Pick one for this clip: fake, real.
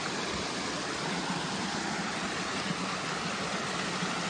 real